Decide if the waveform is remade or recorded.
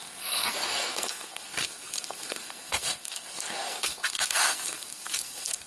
remade